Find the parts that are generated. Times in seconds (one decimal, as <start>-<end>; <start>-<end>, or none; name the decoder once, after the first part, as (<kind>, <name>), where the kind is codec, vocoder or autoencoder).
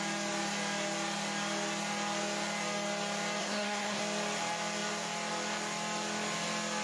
3.4-4.0 (codec, SNAC)